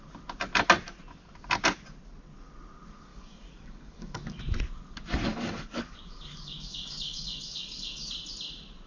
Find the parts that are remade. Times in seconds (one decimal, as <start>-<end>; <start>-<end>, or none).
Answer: 3.1-4.4; 5.3-8.1